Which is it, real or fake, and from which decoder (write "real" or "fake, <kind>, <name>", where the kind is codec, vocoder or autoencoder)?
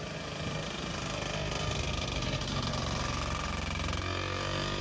real